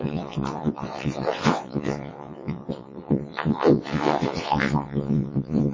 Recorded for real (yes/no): no